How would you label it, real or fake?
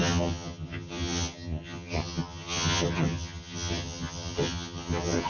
fake